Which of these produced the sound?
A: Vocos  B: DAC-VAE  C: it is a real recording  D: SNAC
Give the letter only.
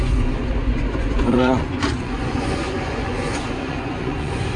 A